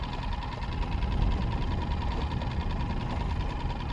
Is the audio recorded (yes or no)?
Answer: yes